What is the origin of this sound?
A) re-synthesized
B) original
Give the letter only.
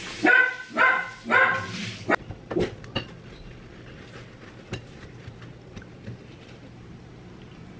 B